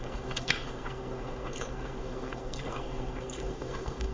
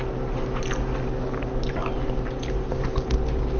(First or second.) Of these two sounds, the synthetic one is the first